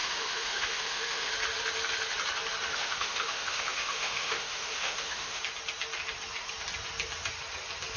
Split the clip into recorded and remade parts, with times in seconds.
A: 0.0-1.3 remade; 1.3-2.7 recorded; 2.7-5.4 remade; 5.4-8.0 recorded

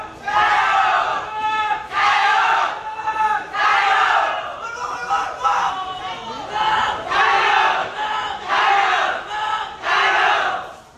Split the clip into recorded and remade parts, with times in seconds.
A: 0.0-1.1 recorded; 1.1-2.7 remade; 2.7-7.8 recorded; 7.8-8.5 remade; 8.5-11.0 recorded

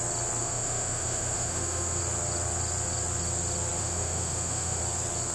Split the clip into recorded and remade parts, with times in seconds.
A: 0.0-0.4 recorded; 0.4-2.0 remade; 2.0-3.8 recorded; 3.8-4.8 remade; 4.8-5.3 recorded

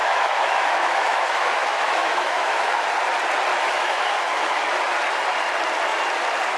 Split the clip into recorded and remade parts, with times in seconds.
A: 0.0-2.9 remade; 2.9-3.5 recorded; 3.5-4.8 remade; 4.8-6.6 recorded